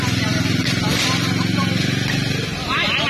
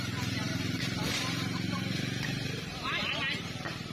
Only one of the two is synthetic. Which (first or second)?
second